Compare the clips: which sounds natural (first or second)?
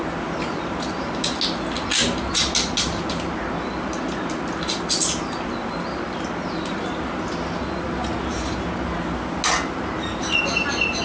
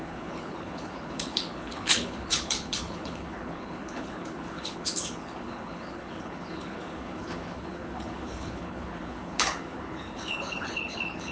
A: first